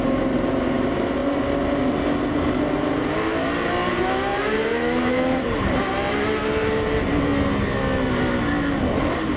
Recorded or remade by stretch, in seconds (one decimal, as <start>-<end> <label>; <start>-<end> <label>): 0.0-1.2 remade; 1.2-2.3 recorded; 2.3-7.3 remade; 7.3-9.4 recorded